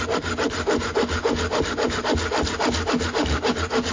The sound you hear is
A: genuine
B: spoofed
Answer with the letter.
A